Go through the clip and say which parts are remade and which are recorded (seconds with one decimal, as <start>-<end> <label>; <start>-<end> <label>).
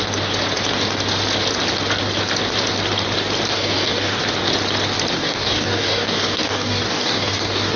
0.0-3.5 recorded; 3.5-4.2 remade; 4.2-5.2 recorded; 5.2-7.8 remade